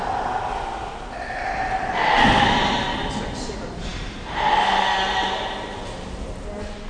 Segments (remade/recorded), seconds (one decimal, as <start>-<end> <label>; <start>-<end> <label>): 0.0-6.9 recorded